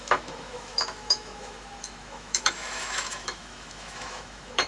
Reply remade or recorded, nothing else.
remade